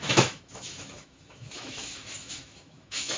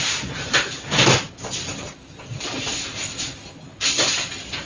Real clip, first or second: second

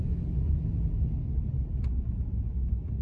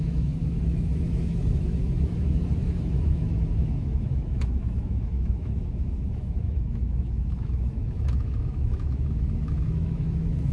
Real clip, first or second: first